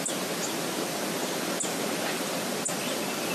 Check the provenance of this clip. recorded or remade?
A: recorded